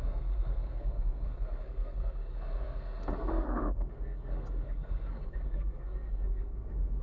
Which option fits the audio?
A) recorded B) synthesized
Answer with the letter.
B